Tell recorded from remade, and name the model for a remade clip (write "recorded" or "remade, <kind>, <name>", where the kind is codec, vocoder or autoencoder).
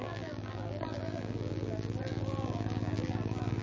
remade, vocoder, BigVGAN v2